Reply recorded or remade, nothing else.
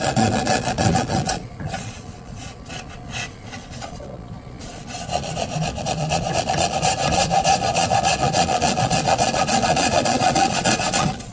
remade